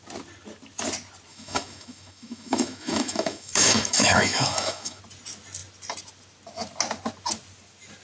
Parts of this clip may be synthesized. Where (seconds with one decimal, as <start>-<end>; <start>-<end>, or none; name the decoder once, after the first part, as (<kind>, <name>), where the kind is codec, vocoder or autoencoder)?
1.3-5.0 (autoencoder, DAC-VAE)